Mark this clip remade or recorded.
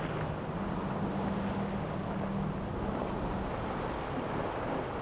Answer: recorded